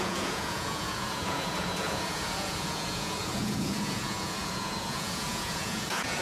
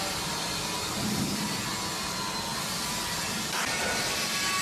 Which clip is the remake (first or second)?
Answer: first